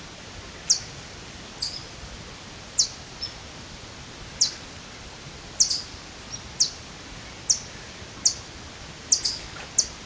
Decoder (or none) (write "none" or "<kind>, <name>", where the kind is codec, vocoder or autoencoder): none